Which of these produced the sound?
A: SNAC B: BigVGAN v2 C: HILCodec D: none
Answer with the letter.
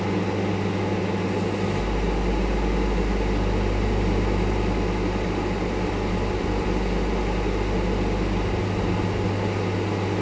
D